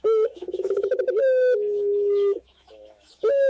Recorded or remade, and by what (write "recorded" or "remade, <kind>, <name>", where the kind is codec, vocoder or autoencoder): remade, autoencoder, DAC-VAE